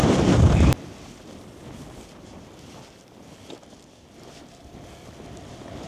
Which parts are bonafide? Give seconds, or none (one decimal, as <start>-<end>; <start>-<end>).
0.5-5.9